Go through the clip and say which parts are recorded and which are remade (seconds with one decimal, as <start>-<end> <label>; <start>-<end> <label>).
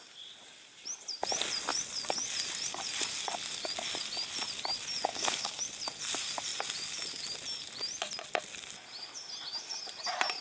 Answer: 0.0-5.1 recorded; 5.1-5.6 remade; 5.6-10.4 recorded